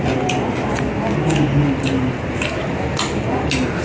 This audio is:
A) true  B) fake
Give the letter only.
A